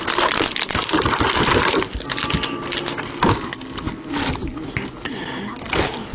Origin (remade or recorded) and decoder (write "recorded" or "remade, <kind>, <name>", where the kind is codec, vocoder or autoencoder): recorded